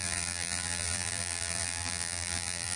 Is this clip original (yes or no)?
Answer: no